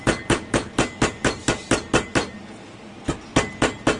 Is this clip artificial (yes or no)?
no